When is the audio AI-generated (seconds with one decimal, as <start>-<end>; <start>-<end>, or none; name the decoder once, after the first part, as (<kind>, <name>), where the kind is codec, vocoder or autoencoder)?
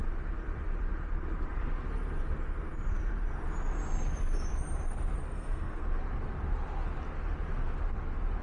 5.3-5.8 (codec, SNAC)